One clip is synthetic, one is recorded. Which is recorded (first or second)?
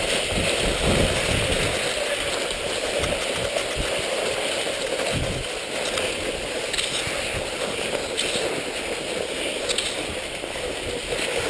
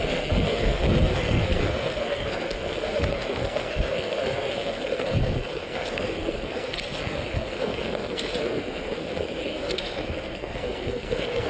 first